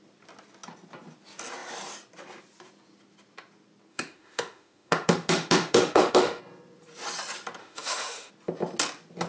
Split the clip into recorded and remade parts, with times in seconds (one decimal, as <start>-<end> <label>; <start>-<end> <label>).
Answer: 0.0-3.9 recorded; 3.9-6.4 remade; 6.4-7.6 recorded; 7.6-8.3 remade; 8.3-9.3 recorded